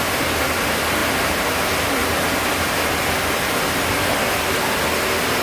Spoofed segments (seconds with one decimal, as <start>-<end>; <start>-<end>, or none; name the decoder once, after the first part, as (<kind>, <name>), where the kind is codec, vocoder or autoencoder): none